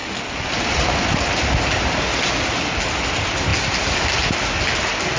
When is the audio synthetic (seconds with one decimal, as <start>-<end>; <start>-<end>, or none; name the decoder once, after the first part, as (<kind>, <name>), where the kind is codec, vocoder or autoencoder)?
none